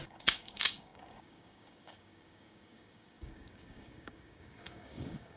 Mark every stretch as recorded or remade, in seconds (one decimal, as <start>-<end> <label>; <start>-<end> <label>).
0.0-5.4 remade